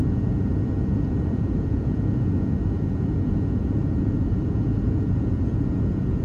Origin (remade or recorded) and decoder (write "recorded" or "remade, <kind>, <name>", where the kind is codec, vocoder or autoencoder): remade, vocoder, Vocos